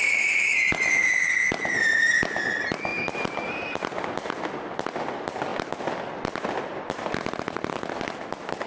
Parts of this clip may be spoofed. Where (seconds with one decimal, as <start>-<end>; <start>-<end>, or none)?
none